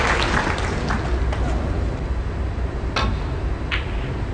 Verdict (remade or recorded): recorded